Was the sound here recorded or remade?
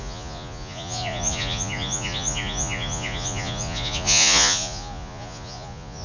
remade